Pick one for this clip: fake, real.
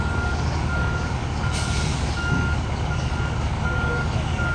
fake